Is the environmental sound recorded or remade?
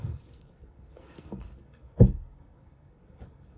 remade